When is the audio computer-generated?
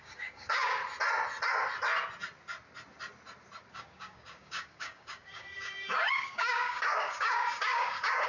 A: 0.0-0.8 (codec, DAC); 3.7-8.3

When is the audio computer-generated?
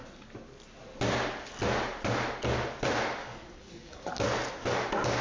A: 3.2-4.1 (codec, DAC)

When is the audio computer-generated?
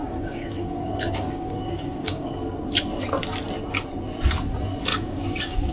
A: 0.0-2.3 (codec, DAC); 4.9-5.7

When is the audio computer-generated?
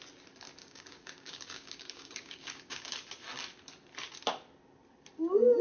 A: 0.6-2.9 (codec, DAC)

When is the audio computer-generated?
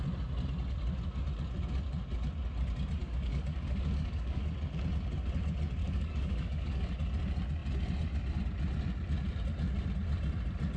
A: 3.0-4.4 (codec, DAC); 5.8-6.9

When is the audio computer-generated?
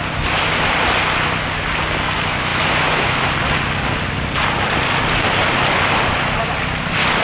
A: none